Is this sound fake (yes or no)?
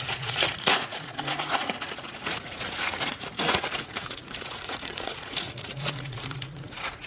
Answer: yes